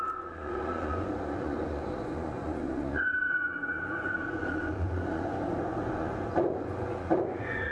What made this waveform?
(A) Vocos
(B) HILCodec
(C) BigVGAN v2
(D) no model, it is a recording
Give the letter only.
A